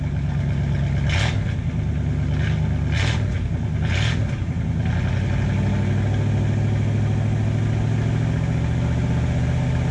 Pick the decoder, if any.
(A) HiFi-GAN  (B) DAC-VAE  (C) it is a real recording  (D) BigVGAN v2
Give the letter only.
C